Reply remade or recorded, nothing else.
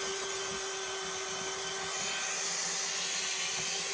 recorded